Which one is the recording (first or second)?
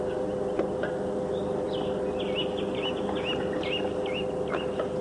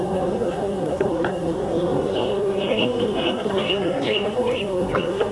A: first